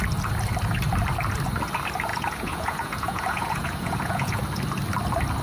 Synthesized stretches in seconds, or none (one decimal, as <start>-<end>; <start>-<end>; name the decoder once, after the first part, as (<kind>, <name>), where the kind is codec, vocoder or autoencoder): 2.1-4.4 (vocoder, Vocos)